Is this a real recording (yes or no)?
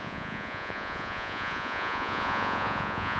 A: no